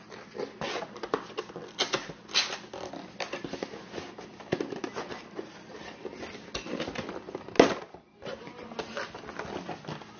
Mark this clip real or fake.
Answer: real